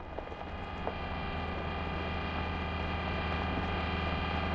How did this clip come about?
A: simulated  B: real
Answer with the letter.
B